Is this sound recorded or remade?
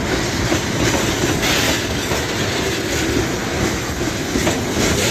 recorded